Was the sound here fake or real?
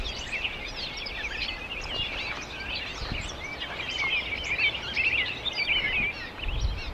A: real